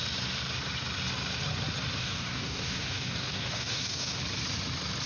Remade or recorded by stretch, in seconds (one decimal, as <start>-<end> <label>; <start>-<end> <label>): 0.0-2.0 recorded; 2.0-4.2 remade; 4.2-5.1 recorded